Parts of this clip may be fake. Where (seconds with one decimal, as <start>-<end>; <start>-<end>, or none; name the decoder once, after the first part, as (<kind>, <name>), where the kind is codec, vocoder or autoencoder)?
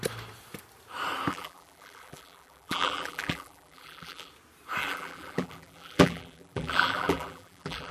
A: 1.3-4.3 (vocoder, BigVGAN v2); 4.8-7.9